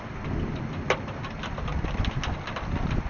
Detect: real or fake real